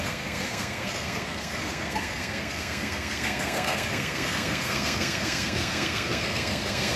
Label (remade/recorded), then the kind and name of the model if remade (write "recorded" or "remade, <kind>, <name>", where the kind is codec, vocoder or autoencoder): remade, codec, SNAC